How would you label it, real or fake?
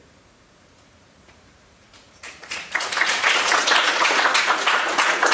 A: fake